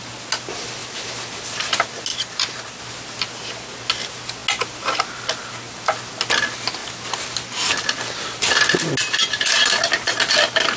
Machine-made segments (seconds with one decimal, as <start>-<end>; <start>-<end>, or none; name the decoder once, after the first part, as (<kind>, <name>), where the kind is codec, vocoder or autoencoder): 2.1-2.8 (vocoder, BigVGAN v2)